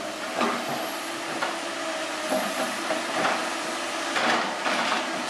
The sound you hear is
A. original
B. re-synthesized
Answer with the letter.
A